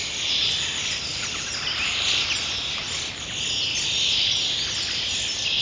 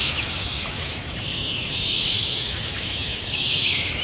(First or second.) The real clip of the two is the first